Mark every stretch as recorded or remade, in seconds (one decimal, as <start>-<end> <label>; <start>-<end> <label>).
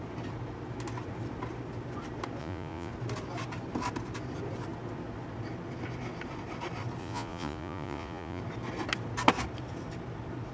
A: 0.0-2.4 recorded; 2.4-2.9 remade; 2.9-7.0 recorded; 7.0-8.4 remade; 8.4-10.5 recorded